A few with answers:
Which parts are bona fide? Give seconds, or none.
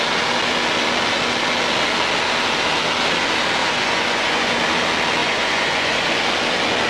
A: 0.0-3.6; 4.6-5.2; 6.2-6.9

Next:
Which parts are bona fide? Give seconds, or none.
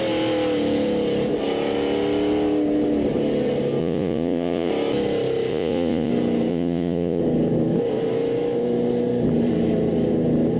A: 0.0-3.8; 4.7-5.5; 6.1-6.5; 7.2-10.6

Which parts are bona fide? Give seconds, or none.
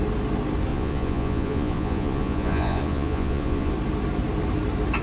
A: 0.0-0.7; 3.7-5.0